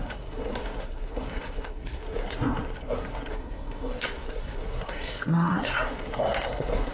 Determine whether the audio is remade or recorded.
remade